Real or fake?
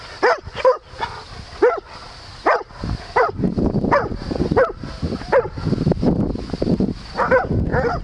real